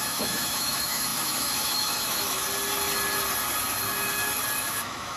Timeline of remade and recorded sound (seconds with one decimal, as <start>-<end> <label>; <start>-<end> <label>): 0.0-2.4 remade; 2.4-4.6 recorded; 4.6-5.2 remade